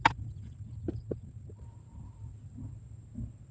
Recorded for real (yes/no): yes